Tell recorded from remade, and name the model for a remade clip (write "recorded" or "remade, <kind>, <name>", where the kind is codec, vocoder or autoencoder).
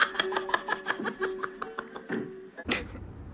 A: recorded